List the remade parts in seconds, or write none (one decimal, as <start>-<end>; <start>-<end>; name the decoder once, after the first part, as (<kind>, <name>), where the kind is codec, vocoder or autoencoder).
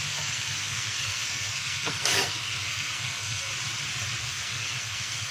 0.0-3.5 (codec, SNAC); 4.2-5.3